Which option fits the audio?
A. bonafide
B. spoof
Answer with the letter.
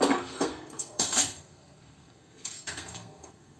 B